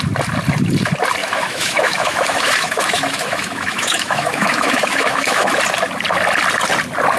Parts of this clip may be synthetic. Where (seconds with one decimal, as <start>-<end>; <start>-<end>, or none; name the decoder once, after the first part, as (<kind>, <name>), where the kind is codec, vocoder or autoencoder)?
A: 1.2-5.5 (autoencoder, DAC-VAE)

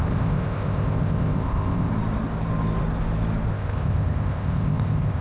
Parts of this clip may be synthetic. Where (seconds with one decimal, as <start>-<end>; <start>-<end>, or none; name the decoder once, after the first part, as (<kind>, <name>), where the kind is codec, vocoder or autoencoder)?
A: 0.0-1.9 (codec, ZipCodec); 3.5-5.2

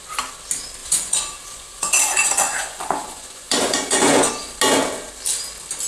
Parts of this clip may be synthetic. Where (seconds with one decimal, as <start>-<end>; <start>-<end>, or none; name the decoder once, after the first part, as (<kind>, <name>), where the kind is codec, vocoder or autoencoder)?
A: 0.8-4.3 (vocoder, Vocos)

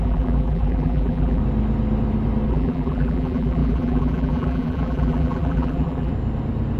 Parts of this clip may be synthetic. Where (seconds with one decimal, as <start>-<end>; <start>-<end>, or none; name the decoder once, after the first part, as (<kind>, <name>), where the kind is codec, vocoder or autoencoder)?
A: 0.0-1.4 (vocoder, BigVGAN v2); 2.5-6.1